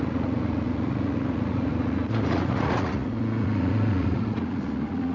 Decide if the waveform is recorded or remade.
remade